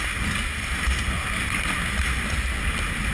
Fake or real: real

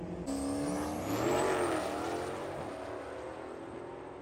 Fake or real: real